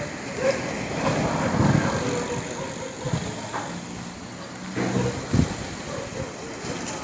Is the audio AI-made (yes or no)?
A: no